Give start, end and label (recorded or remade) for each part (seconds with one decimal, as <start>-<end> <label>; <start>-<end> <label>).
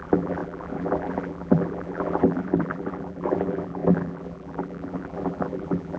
0.0-6.0 remade